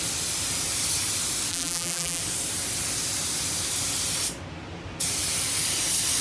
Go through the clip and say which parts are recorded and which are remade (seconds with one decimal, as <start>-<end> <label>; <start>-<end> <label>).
0.0-1.5 recorded; 1.5-2.2 remade; 2.2-6.2 recorded